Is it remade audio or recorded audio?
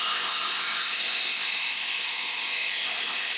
remade